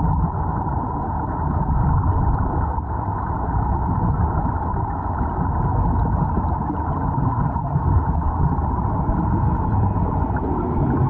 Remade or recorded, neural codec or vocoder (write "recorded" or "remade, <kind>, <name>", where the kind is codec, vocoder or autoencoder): recorded